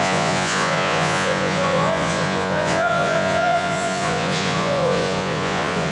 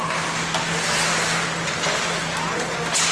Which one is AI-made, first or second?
first